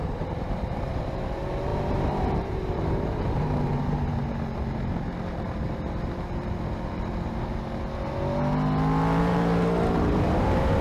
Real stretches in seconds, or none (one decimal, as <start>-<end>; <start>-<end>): 4.1-9.2